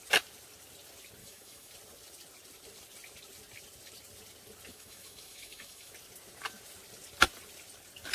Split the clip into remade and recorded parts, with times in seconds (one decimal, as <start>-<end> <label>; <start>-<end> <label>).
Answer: 0.0-1.2 recorded; 1.2-1.7 remade; 1.7-4.7 recorded; 4.7-5.9 remade; 5.9-8.1 recorded